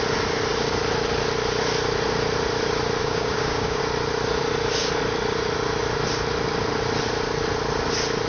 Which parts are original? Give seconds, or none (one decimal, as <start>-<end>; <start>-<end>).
0.0-3.0; 3.8-8.3

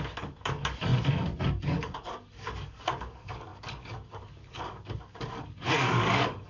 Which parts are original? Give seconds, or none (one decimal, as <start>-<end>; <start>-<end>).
none

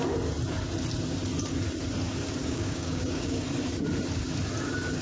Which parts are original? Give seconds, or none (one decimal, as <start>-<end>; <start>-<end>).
0.0-2.4; 3.4-5.0

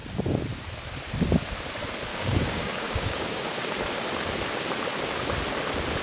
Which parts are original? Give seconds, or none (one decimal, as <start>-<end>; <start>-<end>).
0.0-2.1; 3.5-6.0

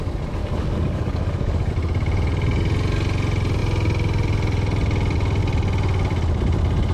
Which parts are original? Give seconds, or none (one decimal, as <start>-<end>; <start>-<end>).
0.0-0.4; 1.7-6.9

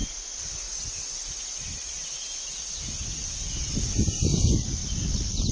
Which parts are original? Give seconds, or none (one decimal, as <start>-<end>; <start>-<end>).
0.0-5.5

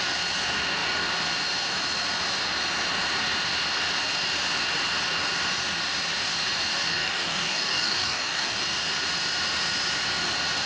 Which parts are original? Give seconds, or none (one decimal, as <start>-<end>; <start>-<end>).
0.0-6.8; 8.6-10.7

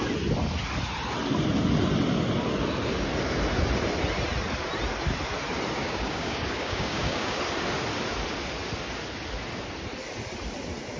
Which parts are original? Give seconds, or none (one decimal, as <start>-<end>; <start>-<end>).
0.0-5.8; 7.4-11.0